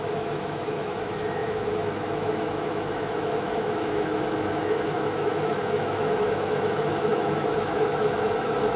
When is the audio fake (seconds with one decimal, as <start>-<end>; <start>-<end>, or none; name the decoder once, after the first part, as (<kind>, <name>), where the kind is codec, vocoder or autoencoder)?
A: 0.0-8.8 (autoencoder, DAC-VAE)